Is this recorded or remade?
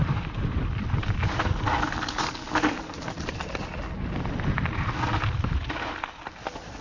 recorded